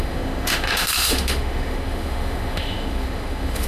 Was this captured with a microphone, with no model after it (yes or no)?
no